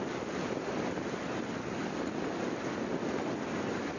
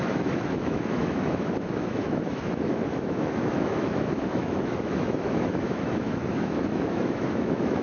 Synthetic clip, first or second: second